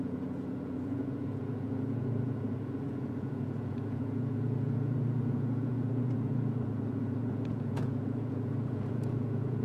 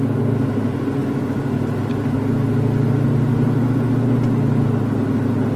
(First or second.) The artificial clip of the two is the first